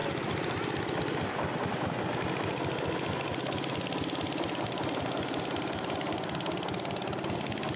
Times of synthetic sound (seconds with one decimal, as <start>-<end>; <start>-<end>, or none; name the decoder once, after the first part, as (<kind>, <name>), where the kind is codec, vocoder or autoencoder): none